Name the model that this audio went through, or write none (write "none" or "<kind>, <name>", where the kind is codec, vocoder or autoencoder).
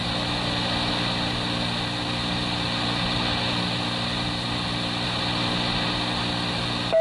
none